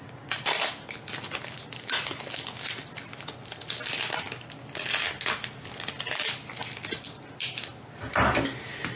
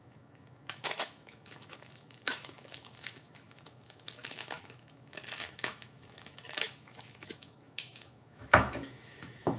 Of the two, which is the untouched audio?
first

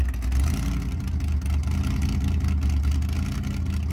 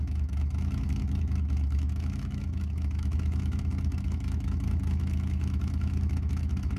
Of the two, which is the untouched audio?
first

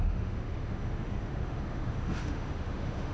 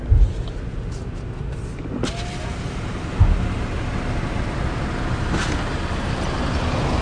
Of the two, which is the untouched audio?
second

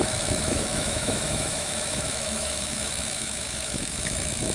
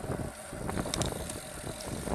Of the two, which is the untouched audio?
second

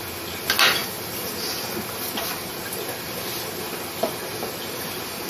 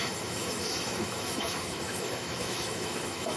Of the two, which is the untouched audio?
first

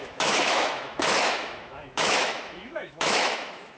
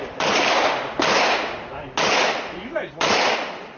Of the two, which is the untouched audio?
second